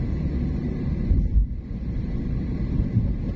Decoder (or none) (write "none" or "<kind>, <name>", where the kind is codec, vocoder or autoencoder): vocoder, BigVGAN v2